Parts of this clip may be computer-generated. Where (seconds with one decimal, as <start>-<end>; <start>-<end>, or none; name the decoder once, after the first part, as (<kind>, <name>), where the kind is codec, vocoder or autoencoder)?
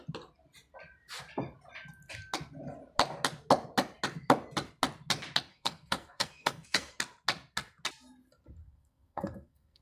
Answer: 5.5-7.0 (codec, SNAC); 8.6-9.8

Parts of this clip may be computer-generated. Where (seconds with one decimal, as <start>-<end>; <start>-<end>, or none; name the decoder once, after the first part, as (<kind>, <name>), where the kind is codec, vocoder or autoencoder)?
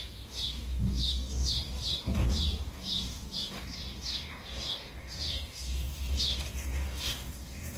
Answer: 0.0-7.8 (codec, DAC)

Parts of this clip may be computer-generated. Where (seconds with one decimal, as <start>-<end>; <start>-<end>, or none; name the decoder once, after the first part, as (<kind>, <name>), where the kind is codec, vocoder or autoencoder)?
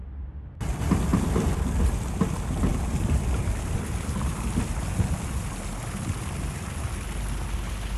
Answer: 2.7-5.3 (vocoder, BigVGAN v2)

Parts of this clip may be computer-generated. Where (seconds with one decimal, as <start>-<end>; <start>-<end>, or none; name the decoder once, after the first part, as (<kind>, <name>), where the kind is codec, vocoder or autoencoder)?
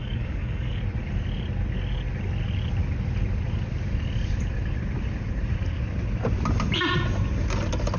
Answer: 0.0-0.8 (codec, DAC)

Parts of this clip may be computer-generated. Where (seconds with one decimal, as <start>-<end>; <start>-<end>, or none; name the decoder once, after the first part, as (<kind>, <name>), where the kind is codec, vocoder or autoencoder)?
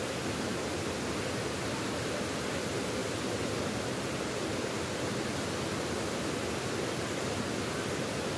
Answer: none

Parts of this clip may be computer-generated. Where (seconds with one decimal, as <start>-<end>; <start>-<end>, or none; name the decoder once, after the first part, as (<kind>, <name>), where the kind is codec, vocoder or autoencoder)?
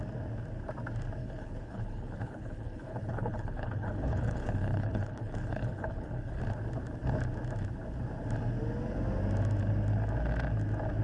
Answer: 1.2-6.4 (codec, HILCodec)